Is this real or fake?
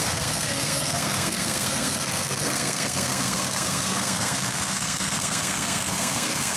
fake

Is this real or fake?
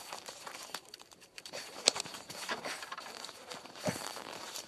fake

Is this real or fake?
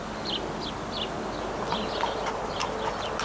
real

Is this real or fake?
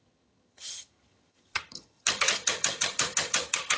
fake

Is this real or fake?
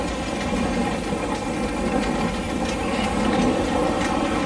real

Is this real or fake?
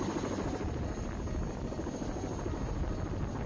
real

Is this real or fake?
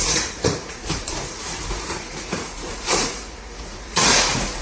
fake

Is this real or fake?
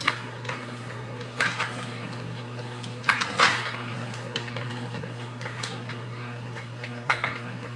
fake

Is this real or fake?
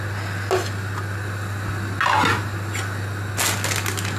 real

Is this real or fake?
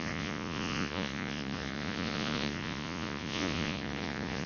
fake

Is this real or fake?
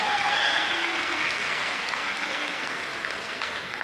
fake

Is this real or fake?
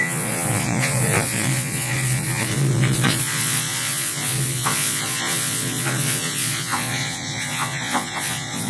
fake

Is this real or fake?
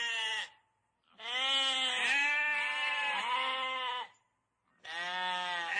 real